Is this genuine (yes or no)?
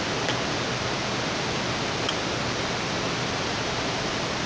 yes